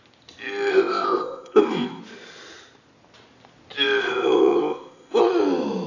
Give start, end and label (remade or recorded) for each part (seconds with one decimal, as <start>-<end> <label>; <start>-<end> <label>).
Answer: 0.0-0.7 recorded; 0.7-2.0 remade; 2.0-4.0 recorded; 4.0-5.2 remade; 5.2-5.9 recorded